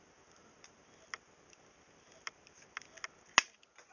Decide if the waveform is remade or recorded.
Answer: recorded